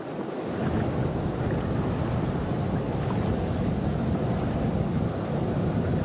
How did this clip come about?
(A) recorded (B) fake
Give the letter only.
A